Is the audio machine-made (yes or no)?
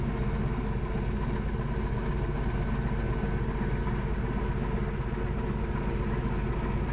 no